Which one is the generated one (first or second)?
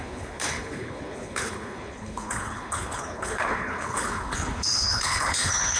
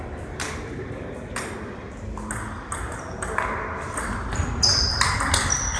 first